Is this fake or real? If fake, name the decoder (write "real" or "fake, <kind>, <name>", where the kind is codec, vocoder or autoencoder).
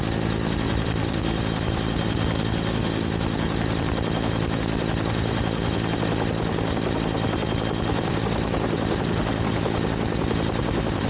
real